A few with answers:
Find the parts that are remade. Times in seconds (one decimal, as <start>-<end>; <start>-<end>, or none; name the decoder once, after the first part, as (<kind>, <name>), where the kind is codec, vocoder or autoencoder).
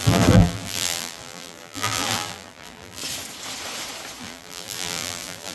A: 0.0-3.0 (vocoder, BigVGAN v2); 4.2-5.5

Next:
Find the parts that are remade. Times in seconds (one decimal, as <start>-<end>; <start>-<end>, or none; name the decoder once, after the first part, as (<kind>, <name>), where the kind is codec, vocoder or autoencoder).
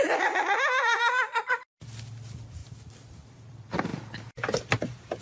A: 0.0-2.6 (vocoder, BigVGAN v2); 3.1-5.2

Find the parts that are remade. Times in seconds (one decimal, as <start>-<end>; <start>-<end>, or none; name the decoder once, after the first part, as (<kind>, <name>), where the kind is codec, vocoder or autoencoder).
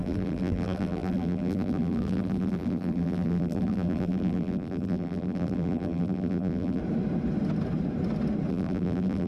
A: 0.0-6.8 (vocoder, BigVGAN v2); 8.5-9.3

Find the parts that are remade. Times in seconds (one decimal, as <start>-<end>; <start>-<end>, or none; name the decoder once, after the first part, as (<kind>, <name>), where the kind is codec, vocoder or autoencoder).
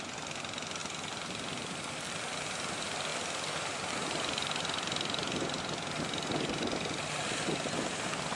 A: none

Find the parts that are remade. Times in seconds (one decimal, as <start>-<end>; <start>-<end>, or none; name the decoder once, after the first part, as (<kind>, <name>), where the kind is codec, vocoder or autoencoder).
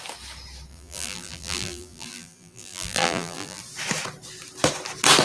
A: 0.7-3.6 (vocoder, BigVGAN v2)